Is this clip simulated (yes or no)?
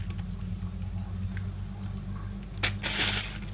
no